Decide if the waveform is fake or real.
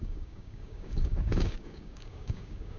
fake